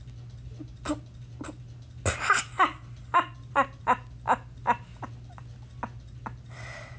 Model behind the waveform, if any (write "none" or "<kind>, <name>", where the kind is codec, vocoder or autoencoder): none